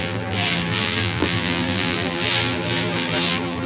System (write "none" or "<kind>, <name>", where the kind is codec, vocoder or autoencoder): vocoder, BigVGAN v2